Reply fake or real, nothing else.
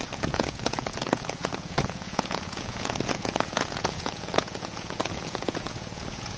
fake